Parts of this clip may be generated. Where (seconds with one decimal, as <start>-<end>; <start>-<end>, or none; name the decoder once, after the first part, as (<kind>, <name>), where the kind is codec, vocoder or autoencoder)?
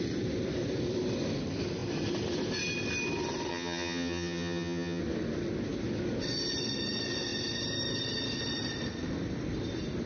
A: 3.5-5.0 (vocoder, HiFi-GAN)